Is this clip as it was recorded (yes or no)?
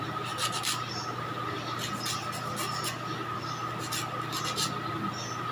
yes